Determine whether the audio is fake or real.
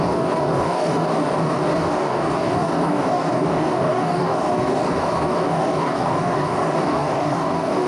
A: fake